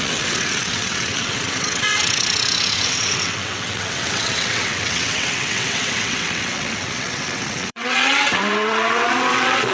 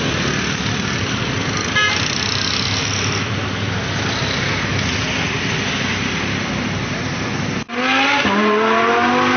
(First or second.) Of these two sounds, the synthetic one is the first